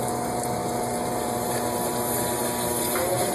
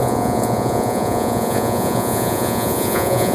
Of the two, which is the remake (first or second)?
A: second